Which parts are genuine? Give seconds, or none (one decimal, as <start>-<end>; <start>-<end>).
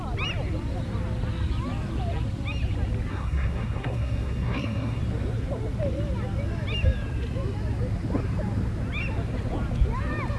0.0-3.1; 5.0-10.4